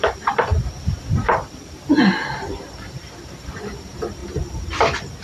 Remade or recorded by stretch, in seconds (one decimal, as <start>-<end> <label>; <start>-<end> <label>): 0.0-0.5 remade; 0.5-1.1 recorded; 1.1-4.2 remade; 4.2-5.2 recorded